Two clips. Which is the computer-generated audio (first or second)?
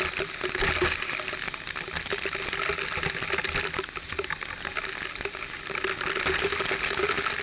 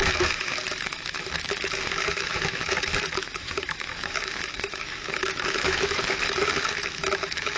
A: second